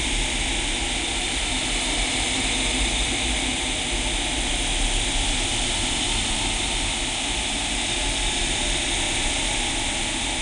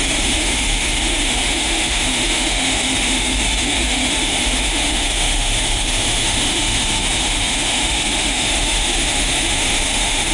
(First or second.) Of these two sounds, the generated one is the second